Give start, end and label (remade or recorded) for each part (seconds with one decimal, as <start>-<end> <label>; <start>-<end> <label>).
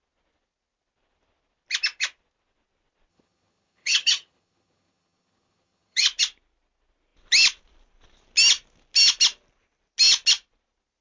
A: 0.0-3.1 recorded; 3.1-6.0 remade; 6.0-11.0 recorded